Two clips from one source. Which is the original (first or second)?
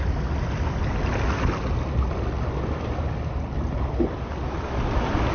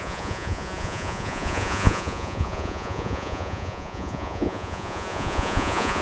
first